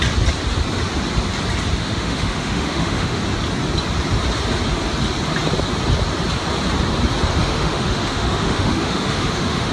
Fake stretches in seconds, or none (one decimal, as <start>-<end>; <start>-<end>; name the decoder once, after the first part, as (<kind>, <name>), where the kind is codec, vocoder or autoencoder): 1.8-3.2 (autoencoder, DAC-VAE); 7.3-9.7